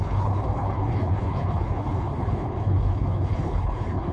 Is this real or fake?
fake